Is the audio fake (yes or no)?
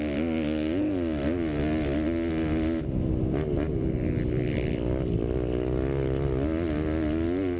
no